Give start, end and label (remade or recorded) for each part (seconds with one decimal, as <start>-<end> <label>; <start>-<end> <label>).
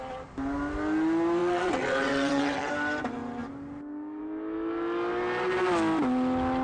0.0-1.4 recorded; 1.4-2.7 remade; 2.7-6.6 recorded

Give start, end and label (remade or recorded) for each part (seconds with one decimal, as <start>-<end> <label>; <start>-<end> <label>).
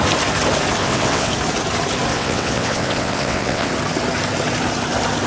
0.0-0.8 recorded; 0.8-1.3 remade; 1.3-2.1 recorded; 2.1-3.7 remade; 3.7-5.3 recorded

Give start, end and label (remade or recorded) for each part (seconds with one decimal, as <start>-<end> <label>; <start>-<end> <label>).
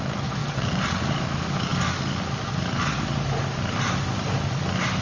0.0-0.4 recorded; 0.4-1.0 remade; 1.0-5.0 recorded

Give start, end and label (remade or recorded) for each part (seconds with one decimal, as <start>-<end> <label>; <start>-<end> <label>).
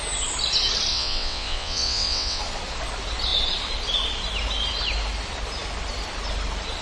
0.0-0.9 recorded; 0.9-2.4 remade; 2.4-6.8 recorded